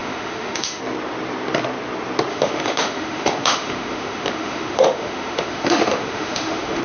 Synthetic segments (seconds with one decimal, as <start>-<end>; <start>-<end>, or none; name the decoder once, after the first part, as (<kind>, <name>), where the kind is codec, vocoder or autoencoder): 0.0-0.8 (autoencoder, DAC-VAE); 2.3-6.8